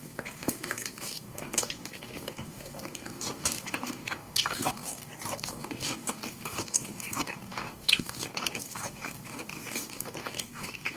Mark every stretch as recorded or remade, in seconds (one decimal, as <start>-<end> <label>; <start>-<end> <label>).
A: 0.0-11.0 remade